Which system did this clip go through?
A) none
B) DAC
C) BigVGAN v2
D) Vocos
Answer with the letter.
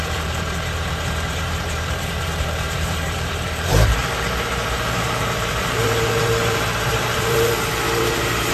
C